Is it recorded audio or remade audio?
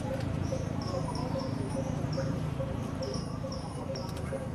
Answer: remade